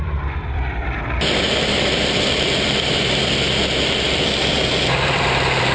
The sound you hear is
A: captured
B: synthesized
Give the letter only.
B